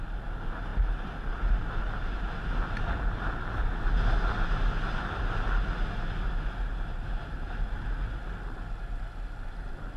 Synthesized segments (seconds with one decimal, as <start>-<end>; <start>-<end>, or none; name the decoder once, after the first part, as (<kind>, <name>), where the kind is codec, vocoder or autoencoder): none